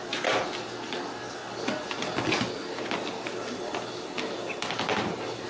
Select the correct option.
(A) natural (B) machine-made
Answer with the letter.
A